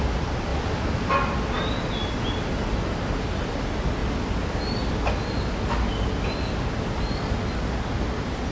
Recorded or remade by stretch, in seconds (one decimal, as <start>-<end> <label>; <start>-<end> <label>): 0.0-8.5 recorded